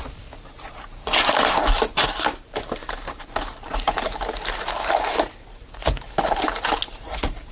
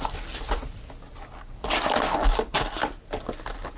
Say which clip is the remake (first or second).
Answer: first